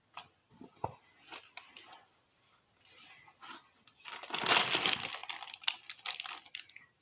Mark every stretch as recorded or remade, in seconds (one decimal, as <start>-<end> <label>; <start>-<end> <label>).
0.0-7.0 recorded